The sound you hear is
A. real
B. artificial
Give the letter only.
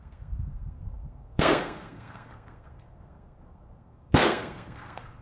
B